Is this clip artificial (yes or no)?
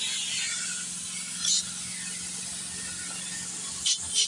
no